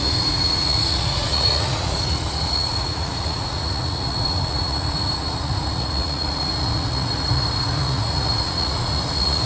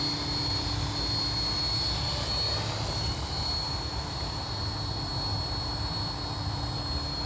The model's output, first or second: first